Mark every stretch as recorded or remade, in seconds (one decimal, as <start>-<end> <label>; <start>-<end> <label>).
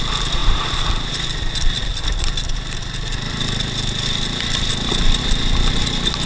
0.0-6.3 remade